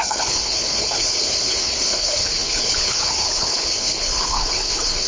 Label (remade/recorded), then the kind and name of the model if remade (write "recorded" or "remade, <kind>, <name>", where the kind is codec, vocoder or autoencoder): remade, codec, HILCodec